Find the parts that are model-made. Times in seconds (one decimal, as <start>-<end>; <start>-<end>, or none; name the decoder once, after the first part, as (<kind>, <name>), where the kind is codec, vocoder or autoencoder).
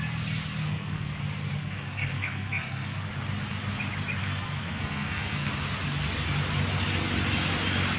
0.6-1.2 (codec, SNAC); 1.6-3.1; 4.2-5.5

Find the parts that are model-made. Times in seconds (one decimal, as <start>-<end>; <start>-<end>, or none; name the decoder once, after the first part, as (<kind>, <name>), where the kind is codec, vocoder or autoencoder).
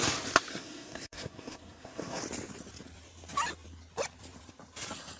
0.5-2.2 (codec, SNAC)